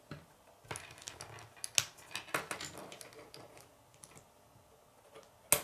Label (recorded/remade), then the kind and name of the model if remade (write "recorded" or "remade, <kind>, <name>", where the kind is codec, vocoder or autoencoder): recorded